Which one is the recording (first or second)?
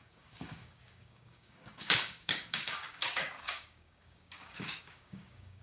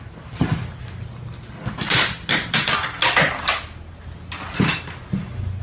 second